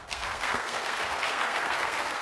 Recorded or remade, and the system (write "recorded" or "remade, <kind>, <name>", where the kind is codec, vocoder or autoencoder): remade, codec, SNAC